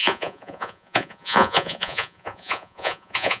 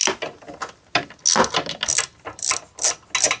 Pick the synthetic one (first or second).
first